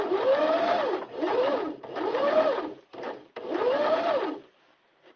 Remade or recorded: remade